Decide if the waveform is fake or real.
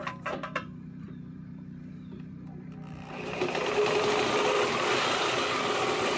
fake